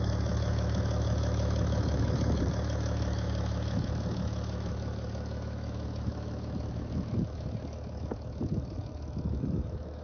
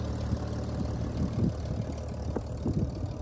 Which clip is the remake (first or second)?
first